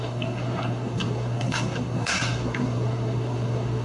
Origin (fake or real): fake